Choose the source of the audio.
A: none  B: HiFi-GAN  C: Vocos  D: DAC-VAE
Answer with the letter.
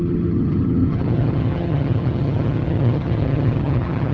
B